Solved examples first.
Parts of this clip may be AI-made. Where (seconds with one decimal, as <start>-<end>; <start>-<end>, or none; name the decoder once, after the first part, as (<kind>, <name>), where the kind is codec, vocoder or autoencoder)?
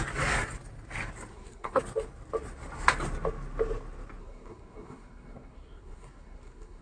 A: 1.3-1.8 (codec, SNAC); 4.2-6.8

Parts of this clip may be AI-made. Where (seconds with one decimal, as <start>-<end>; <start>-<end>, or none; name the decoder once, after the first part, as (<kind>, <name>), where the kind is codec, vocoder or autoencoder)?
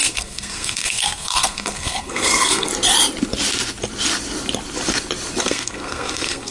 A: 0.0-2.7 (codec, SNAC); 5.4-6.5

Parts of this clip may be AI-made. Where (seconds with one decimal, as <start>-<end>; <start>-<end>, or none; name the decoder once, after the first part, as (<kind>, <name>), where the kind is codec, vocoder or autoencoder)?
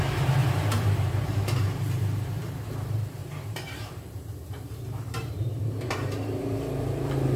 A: 0.0-7.4 (vocoder, BigVGAN v2)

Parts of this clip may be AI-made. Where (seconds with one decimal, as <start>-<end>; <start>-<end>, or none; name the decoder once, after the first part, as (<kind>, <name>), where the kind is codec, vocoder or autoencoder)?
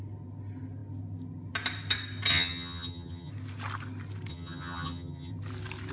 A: 2.3-3.3 (vocoder, HiFi-GAN); 4.3-5.3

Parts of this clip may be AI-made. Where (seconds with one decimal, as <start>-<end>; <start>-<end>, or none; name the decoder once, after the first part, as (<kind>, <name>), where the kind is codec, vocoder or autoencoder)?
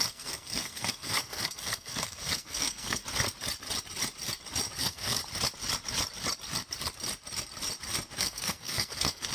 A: 0.0-3.0 (codec, SNAC); 4.8-5.2; 8.2-9.3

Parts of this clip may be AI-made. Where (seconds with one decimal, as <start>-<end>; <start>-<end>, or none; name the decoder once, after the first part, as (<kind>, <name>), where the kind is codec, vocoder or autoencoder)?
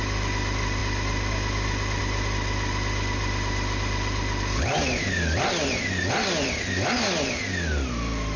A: none